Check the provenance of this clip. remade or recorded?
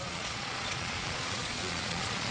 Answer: remade